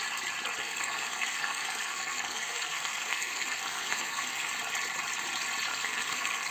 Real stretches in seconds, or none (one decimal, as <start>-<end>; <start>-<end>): 0.0-0.6; 4.5-5.7